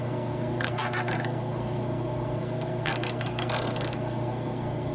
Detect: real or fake fake